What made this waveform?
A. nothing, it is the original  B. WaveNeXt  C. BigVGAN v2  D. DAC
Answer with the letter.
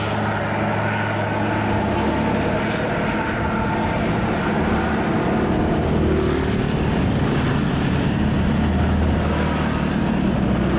A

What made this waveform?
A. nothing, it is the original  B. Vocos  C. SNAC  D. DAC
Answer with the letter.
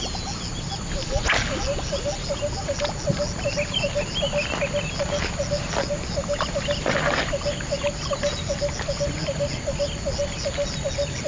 A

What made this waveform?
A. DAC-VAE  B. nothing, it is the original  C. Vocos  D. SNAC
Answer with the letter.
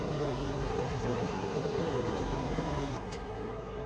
D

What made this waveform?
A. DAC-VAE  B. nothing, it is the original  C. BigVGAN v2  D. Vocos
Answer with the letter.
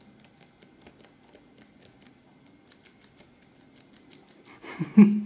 B